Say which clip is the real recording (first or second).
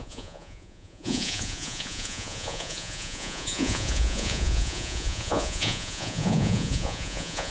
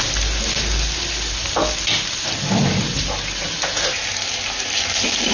second